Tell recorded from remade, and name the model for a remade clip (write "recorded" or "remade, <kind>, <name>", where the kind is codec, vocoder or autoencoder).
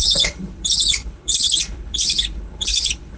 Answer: remade, codec, HILCodec